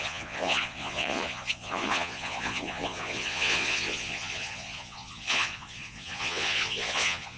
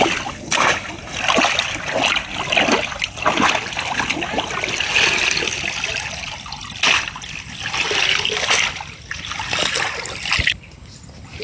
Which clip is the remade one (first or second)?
first